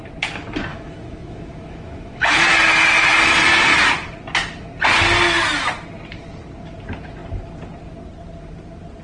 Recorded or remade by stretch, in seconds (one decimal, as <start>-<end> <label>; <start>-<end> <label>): 0.0-0.7 recorded; 0.7-2.5 remade; 2.5-9.0 recorded